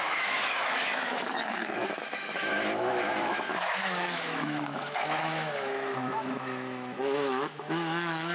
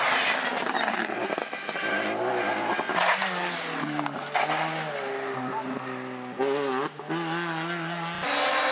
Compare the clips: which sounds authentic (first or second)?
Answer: second